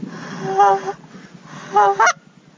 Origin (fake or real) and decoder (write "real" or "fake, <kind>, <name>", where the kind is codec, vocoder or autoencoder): real